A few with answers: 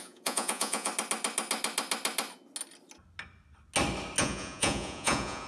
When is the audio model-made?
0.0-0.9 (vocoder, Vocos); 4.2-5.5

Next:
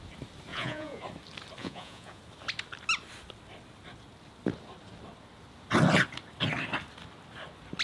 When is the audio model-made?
0.5-1.0 (vocoder, Vocos); 1.6-2.2

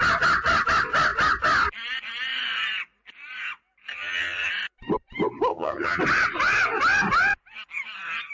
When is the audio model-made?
3.9-4.5 (vocoder, HiFi-GAN); 5.5-6.0

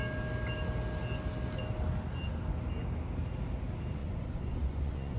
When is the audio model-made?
4.0-5.2 (vocoder, Vocos)

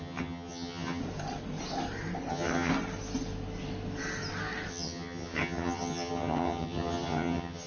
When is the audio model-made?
0.0-1.0 (vocoder, HiFi-GAN); 2.3-2.7; 4.7-7.7

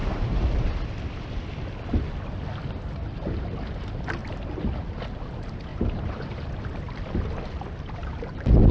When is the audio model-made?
0.0-0.7 (vocoder, BigVGAN v2); 4.2-5.0; 5.7-6.4; 8.0-8.7

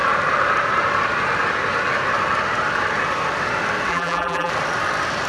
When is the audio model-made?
3.9-4.5 (vocoder, BigVGAN v2)

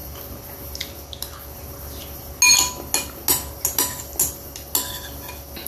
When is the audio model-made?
none